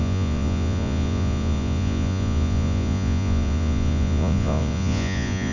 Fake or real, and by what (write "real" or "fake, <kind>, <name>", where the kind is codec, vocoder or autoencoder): fake, vocoder, Vocos